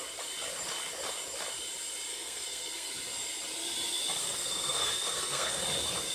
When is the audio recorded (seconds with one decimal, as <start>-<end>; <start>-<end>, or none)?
0.0-2.1; 2.9-4.2; 5.6-6.1